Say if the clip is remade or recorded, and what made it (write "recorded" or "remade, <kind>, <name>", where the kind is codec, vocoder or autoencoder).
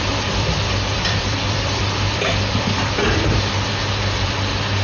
remade, vocoder, BigVGAN v2